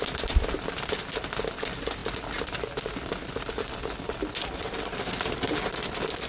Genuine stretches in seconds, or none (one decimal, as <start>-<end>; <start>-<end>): 0.0-6.3